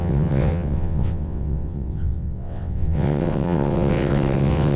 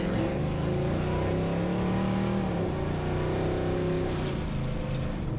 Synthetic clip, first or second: first